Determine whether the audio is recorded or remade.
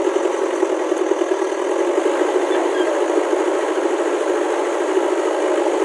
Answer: recorded